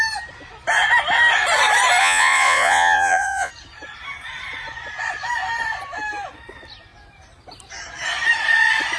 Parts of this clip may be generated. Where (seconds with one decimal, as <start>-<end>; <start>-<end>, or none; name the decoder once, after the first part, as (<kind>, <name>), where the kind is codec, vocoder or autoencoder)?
2.0-3.5 (vocoder, Vocos)